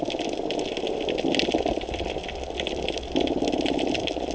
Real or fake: real